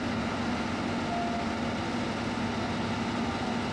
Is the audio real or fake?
real